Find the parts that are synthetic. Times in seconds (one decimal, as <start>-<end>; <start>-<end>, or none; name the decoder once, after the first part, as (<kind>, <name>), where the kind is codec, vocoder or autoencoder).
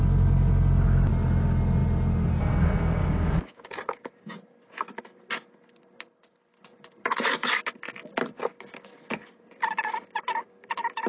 3.0-4.1 (codec, DAC)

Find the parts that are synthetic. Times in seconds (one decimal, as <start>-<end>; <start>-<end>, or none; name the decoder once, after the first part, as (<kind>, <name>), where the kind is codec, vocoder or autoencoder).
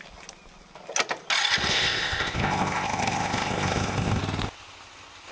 1.7-4.2 (codec, ZipCodec)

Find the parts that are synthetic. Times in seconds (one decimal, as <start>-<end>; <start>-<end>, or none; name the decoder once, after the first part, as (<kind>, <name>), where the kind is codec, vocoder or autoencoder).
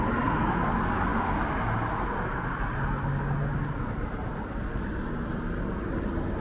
none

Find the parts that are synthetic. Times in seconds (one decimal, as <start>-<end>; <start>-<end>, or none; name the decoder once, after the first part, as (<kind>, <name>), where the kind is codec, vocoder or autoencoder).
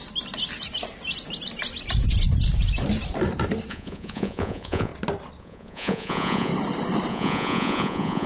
3.7-4.9 (vocoder, Vocos); 5.4-6.5; 7.1-8.3